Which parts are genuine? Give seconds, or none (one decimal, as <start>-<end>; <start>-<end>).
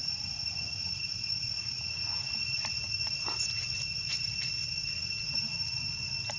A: 2.6-4.8; 5.4-6.4